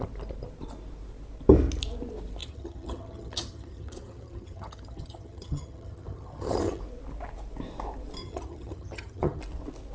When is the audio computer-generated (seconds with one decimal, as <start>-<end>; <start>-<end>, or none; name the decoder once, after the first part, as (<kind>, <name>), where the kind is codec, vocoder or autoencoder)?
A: 2.4-6.8 (vocoder, HiFi-GAN); 8.2-9.4